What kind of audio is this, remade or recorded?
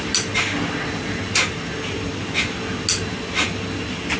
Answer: recorded